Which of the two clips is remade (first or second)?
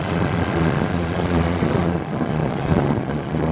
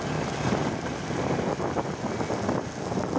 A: first